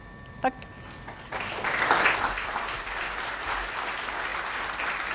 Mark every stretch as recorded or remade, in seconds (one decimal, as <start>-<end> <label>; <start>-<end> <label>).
0.0-5.1 recorded